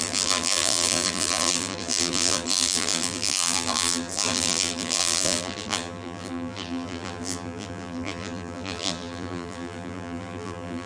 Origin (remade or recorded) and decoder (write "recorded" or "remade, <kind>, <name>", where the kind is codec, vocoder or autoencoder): remade, vocoder, BigVGAN v2